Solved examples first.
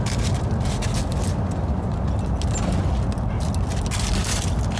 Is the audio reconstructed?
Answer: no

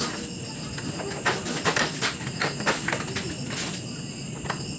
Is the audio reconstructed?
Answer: no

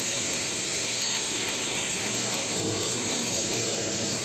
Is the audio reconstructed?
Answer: yes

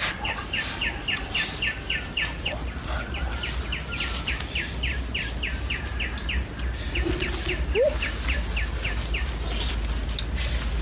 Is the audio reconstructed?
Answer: no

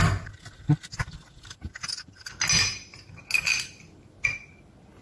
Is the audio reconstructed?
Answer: no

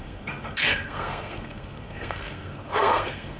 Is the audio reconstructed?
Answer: yes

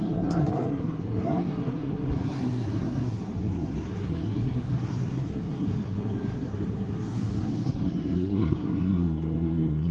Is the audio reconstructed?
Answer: yes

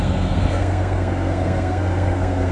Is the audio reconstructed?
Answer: yes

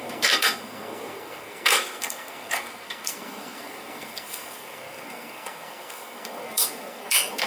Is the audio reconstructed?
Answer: yes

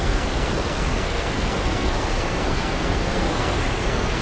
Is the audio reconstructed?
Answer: yes